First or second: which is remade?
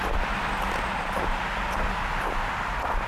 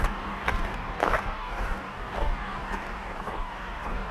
second